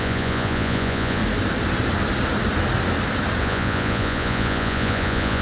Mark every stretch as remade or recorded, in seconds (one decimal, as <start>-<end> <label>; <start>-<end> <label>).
0.0-1.2 remade; 1.2-3.4 recorded; 3.4-5.4 remade

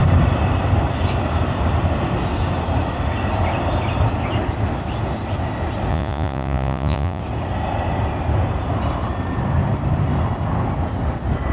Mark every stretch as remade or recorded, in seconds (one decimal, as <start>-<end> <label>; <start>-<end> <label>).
0.0-5.9 recorded; 5.9-7.2 remade; 7.2-11.5 recorded

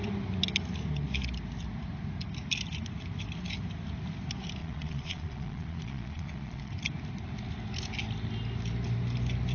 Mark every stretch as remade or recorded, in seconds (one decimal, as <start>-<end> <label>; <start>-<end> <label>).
0.0-4.6 recorded; 4.6-6.7 remade; 6.7-9.5 recorded

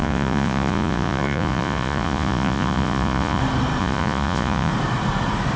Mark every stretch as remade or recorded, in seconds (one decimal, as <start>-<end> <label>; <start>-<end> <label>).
0.0-3.4 remade; 3.4-3.8 recorded; 3.8-4.7 remade; 4.7-5.6 recorded

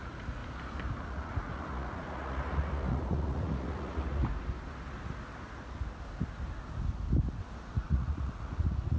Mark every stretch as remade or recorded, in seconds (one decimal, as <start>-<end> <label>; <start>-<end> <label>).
0.0-0.4 remade; 0.4-1.0 recorded; 1.0-4.2 remade; 4.2-7.6 recorded; 7.6-9.0 remade

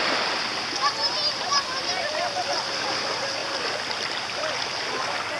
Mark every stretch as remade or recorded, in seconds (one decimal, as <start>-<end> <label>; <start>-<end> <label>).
0.0-5.4 recorded

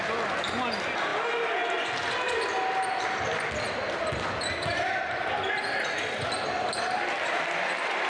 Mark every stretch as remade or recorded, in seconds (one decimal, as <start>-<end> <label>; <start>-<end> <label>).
0.0-8.1 recorded